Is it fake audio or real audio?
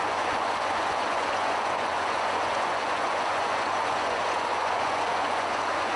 fake